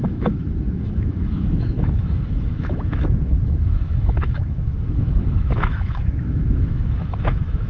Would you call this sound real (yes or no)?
no